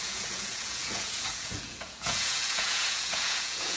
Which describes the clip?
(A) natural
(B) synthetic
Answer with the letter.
B